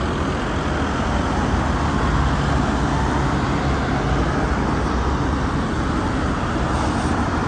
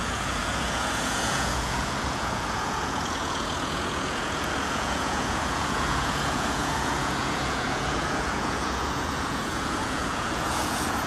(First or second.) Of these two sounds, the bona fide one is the first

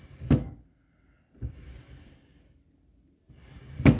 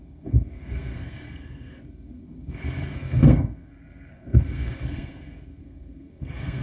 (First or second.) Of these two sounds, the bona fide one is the first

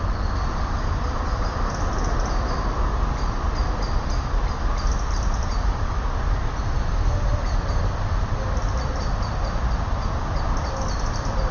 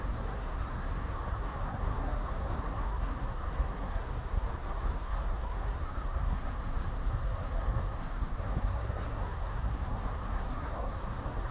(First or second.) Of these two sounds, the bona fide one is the first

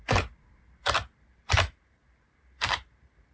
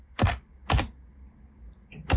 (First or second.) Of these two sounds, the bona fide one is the second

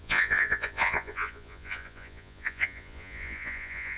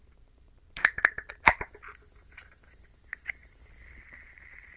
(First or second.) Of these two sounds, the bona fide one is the second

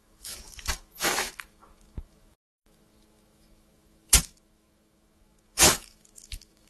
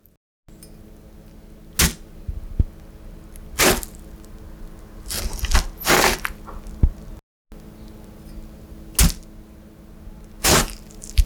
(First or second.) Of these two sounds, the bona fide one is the second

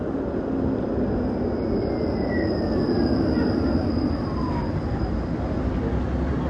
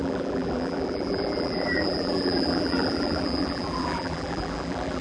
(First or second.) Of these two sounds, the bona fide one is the first